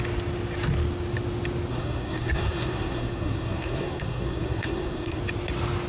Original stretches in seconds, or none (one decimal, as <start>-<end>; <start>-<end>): 0.0-1.7; 5.2-5.9